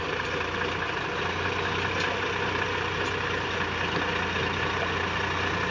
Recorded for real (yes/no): yes